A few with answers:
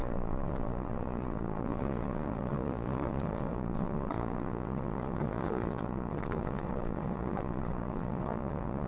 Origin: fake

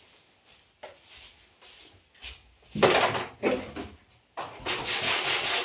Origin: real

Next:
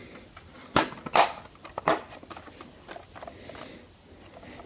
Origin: real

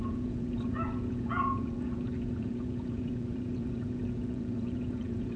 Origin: fake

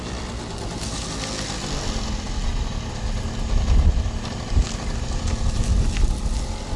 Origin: real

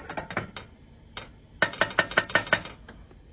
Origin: real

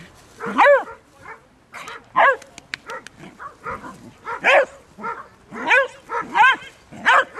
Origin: real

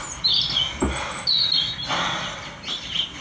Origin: real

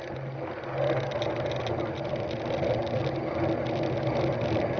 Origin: real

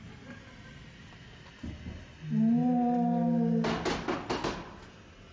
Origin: real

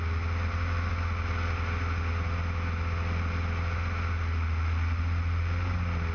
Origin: real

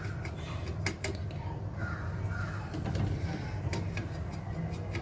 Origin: real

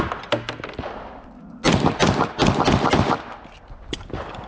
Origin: real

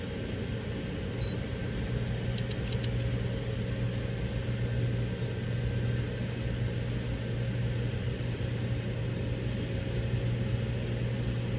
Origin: real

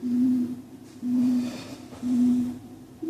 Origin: fake